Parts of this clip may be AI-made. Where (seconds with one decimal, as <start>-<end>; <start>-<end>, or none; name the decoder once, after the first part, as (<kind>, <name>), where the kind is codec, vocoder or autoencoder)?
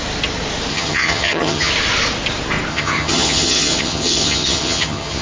0.7-1.7 (vocoder, HiFi-GAN); 2.7-5.2